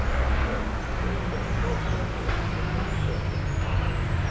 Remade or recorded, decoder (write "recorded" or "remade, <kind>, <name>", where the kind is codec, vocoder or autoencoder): recorded